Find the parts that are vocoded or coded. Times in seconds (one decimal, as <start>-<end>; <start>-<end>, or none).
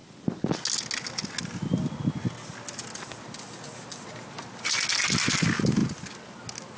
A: none